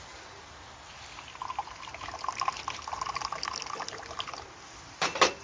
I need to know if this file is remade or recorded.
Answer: recorded